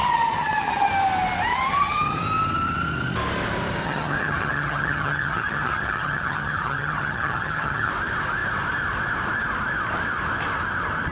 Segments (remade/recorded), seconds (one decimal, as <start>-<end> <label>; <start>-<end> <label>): 0.0-0.9 remade; 0.9-1.5 recorded; 1.5-2.2 remade; 2.2-3.8 recorded; 3.8-7.9 remade; 7.9-11.1 recorded